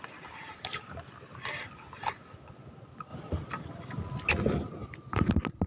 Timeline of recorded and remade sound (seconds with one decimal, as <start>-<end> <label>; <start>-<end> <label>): 0.0-5.7 recorded